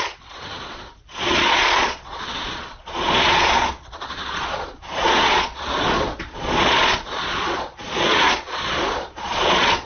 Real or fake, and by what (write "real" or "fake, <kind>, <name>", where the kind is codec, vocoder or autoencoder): fake, vocoder, Vocos